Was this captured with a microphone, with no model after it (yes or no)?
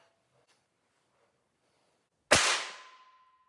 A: yes